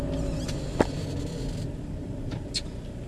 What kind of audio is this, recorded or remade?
recorded